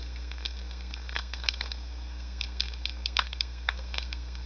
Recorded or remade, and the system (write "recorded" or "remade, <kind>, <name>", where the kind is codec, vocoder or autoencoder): remade, codec, SNAC